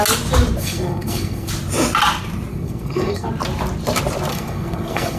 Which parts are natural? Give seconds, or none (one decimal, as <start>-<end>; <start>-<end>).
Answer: 0.0-0.6; 1.5-2.5; 3.3-4.3